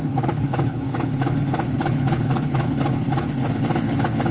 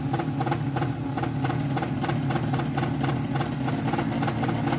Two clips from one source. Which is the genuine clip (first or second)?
second